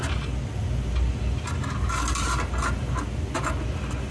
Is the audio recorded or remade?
recorded